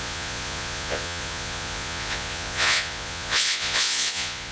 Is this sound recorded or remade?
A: remade